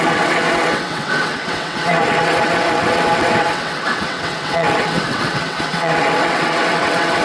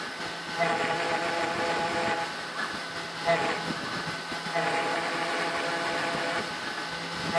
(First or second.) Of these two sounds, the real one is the second